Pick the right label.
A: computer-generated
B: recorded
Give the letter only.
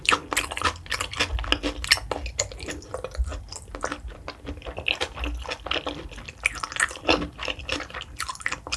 B